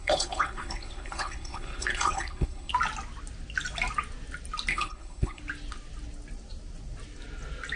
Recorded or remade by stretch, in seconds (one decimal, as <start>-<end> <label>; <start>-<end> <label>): 0.0-2.7 remade; 2.7-4.7 recorded; 4.7-5.4 remade; 5.4-7.8 recorded